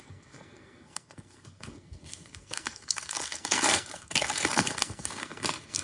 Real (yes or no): no